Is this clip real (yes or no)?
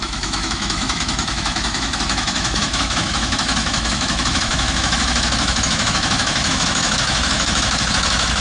no